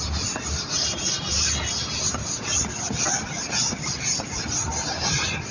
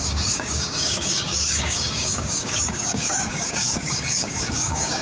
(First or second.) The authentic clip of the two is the first